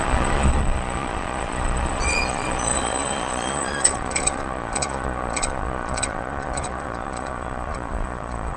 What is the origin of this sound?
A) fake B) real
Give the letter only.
A